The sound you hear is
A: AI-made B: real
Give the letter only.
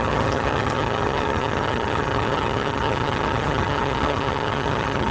A